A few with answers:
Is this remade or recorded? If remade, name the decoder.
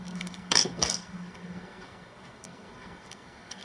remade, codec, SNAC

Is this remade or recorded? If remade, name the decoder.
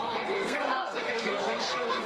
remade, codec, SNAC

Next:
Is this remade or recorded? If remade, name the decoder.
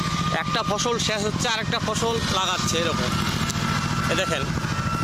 recorded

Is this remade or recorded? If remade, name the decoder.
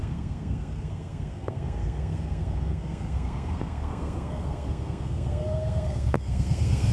remade, codec, SNAC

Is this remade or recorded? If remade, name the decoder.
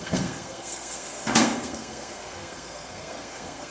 remade, codec, SNAC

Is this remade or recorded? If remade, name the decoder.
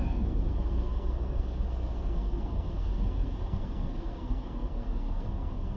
remade, codec, SNAC